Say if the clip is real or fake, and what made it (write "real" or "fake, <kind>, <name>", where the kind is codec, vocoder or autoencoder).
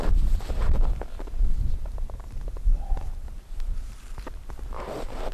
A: fake, vocoder, BigVGAN v2